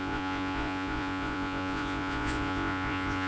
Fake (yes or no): yes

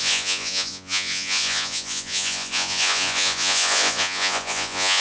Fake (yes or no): yes